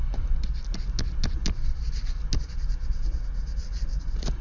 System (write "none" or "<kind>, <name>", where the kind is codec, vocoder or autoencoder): none